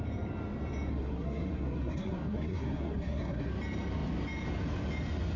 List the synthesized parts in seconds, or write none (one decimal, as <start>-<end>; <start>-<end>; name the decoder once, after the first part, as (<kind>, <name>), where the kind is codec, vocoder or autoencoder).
0.9-3.5 (codec, SNAC)